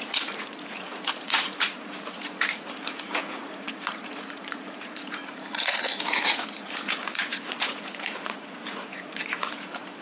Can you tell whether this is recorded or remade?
remade